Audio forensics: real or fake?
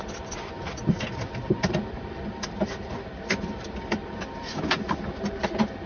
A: fake